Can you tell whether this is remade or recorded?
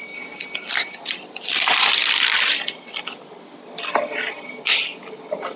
recorded